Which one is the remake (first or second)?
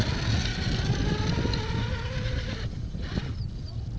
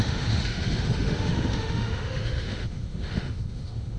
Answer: second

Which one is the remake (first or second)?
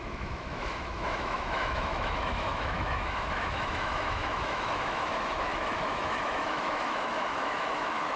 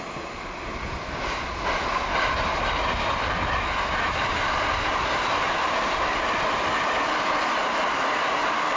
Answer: first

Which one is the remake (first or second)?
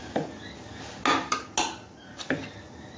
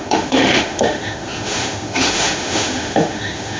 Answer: second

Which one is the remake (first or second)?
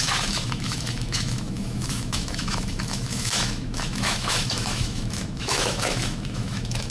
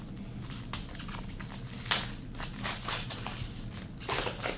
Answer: first